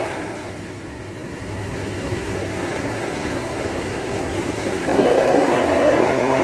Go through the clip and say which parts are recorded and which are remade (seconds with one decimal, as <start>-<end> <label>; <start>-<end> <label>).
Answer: 0.0-6.4 remade